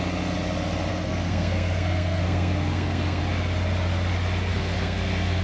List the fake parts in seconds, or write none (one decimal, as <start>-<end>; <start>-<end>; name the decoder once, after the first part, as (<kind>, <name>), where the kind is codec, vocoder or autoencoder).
0.9-3.2 (codec, SNAC); 4.5-5.4